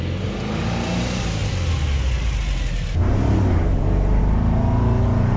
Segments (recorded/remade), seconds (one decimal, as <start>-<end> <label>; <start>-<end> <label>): 0.0-5.4 recorded